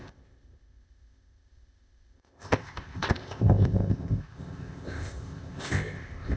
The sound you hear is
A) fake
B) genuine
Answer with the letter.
A